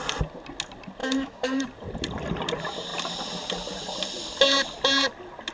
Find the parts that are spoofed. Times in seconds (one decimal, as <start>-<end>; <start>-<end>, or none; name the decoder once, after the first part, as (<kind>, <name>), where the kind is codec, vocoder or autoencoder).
1.0-1.6 (autoencoder, DAC-VAE)